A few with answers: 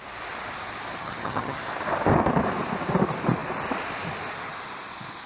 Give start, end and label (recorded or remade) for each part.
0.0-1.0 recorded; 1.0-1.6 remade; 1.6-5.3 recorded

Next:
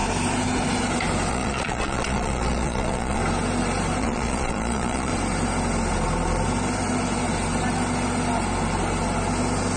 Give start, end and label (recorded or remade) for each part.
0.0-1.3 recorded; 1.3-3.2 remade; 3.2-4.0 recorded; 4.0-5.1 remade; 5.1-9.8 recorded

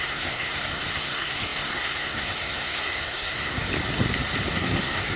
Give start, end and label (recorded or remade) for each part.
0.0-3.7 remade; 3.7-4.5 recorded; 4.5-5.2 remade

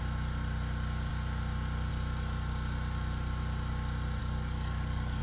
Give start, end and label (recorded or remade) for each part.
0.0-4.2 recorded; 4.2-5.2 remade

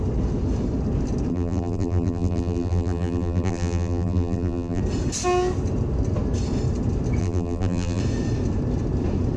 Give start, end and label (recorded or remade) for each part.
0.0-1.3 recorded; 1.3-4.8 remade; 4.8-7.2 recorded; 7.2-8.0 remade; 8.0-9.4 recorded

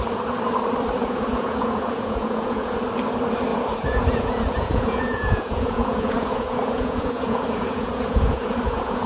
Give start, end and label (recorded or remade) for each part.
0.0-1.0 recorded; 1.0-2.7 remade; 2.7-3.5 recorded; 3.5-9.1 remade

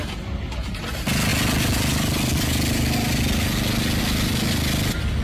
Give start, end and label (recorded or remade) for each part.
0.0-5.2 recorded